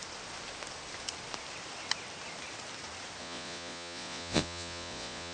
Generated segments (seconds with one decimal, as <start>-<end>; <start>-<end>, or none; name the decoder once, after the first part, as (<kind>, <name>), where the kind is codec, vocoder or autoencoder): 3.2-5.3 (vocoder, Vocos)